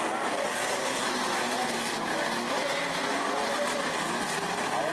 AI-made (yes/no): no